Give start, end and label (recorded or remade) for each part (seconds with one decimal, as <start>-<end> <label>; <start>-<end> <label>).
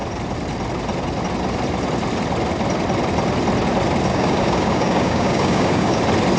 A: 0.0-4.1 recorded; 4.1-6.0 remade; 6.0-6.4 recorded